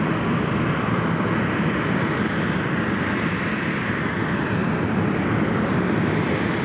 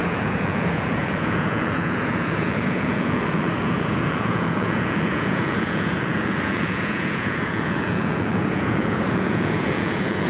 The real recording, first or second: first